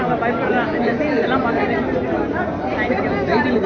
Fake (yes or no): no